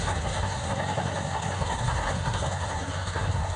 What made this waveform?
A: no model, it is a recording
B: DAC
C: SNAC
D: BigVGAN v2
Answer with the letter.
C